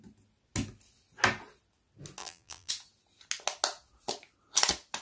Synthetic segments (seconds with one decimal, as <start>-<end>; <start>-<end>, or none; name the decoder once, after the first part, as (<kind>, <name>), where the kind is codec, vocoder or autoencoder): 2.2-2.7 (vocoder, BigVGAN v2)